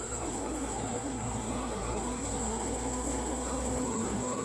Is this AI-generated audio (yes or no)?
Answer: yes